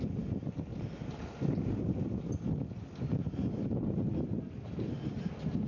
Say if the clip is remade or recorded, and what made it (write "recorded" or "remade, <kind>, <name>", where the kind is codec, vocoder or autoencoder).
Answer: recorded